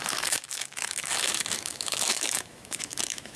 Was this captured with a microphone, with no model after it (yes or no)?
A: no